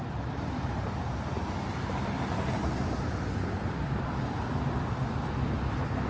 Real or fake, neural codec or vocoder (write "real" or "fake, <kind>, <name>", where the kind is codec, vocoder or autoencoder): real